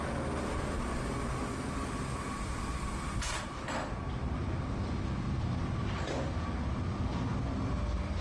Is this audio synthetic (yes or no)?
no